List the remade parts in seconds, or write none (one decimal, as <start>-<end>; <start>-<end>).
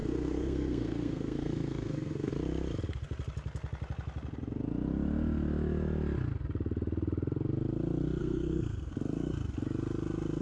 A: 0.0-2.3; 8.2-8.9